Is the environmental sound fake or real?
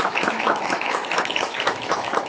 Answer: fake